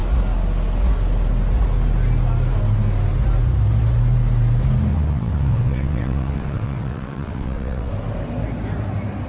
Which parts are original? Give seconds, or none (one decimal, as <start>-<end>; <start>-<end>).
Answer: 0.0-4.9; 7.9-9.3